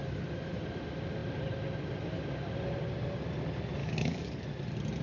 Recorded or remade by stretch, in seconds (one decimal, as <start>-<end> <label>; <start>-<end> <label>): 0.0-3.8 recorded; 3.8-4.4 remade; 4.4-5.0 recorded